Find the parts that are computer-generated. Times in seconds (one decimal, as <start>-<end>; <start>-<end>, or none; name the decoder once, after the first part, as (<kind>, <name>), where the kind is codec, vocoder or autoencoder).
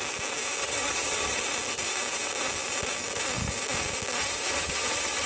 0.6-1.4 (vocoder, HiFi-GAN); 4.2-5.3